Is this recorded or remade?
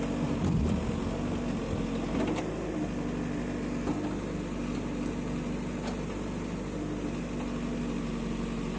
recorded